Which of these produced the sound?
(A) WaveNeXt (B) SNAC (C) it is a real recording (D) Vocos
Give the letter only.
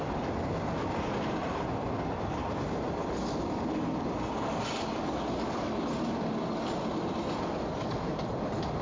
C